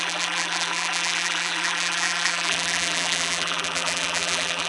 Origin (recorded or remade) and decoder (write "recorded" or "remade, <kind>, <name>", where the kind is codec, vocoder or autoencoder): remade, vocoder, BigVGAN v2